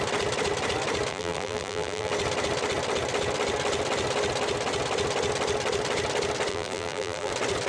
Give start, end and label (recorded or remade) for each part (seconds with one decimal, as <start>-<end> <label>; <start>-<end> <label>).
0.0-1.1 recorded; 1.1-2.1 remade; 2.1-6.5 recorded; 6.5-7.3 remade; 7.3-7.7 recorded